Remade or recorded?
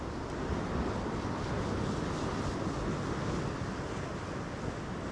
recorded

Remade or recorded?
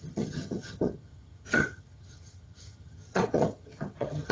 remade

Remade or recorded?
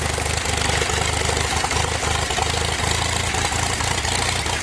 recorded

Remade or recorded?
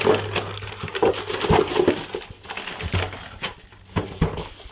recorded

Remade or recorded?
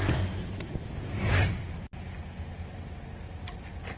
recorded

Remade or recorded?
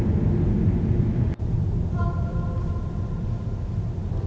remade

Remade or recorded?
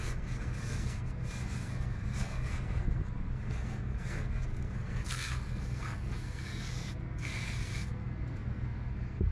remade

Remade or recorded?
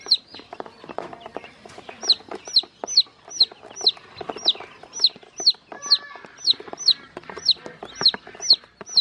recorded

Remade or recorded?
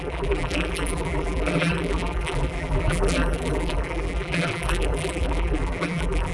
remade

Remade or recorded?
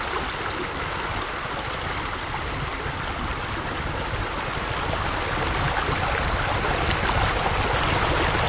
recorded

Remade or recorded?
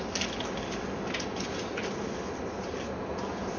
recorded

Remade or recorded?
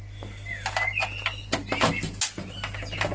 recorded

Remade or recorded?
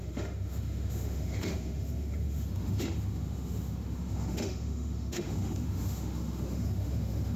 remade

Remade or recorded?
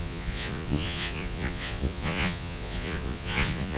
remade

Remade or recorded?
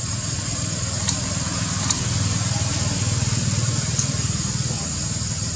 recorded